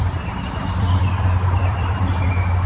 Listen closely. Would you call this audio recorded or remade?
remade